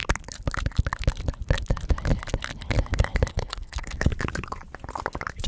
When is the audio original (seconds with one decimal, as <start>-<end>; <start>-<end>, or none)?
0.0-3.3; 4.1-5.5